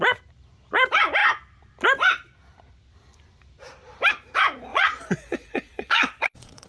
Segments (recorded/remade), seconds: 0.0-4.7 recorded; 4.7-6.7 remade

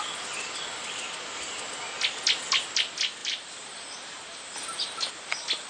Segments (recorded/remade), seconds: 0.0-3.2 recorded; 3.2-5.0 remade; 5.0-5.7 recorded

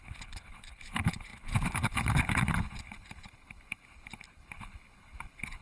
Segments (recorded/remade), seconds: 0.0-5.6 remade